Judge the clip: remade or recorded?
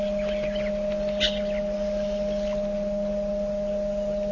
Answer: recorded